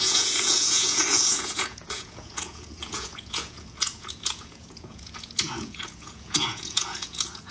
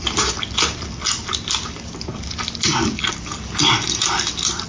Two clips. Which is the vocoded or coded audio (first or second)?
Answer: first